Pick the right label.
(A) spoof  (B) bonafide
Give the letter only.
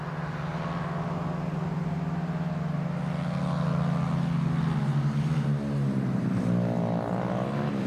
B